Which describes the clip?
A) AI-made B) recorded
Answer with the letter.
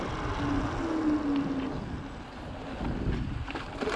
B